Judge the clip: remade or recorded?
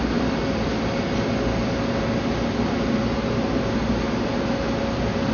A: recorded